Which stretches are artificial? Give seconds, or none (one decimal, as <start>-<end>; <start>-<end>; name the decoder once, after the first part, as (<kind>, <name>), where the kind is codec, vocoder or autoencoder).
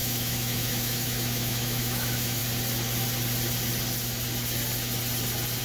0.0-2.4 (autoencoder, DAC-VAE)